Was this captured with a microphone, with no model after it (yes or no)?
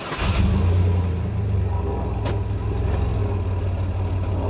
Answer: yes